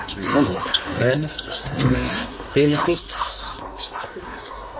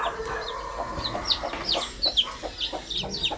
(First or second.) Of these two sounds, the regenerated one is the first